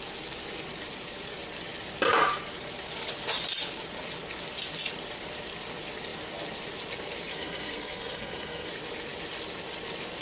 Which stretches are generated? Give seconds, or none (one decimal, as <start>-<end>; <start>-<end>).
7.3-8.7